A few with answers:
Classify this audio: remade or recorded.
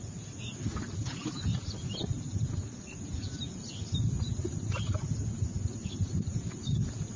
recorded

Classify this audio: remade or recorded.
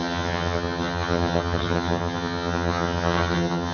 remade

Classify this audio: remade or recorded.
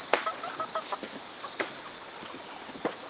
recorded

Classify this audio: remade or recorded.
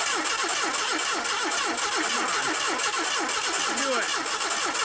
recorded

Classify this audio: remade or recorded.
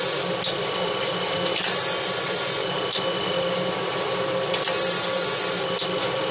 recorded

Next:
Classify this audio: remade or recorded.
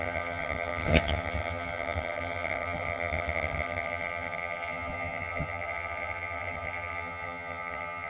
remade